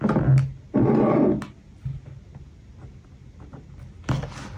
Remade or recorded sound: recorded